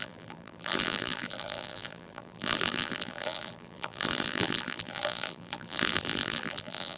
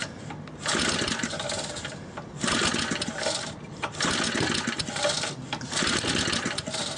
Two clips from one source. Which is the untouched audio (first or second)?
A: second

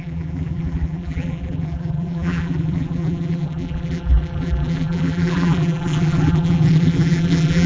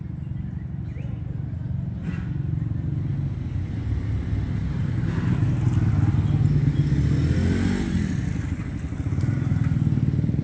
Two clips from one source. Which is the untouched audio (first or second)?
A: second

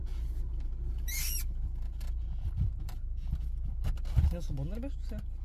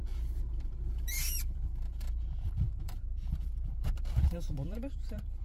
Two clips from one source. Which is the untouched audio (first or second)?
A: first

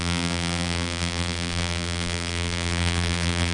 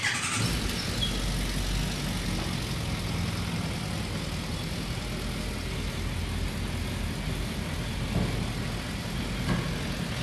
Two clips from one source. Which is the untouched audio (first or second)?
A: second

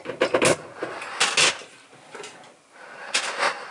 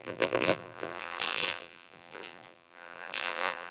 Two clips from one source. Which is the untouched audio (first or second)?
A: first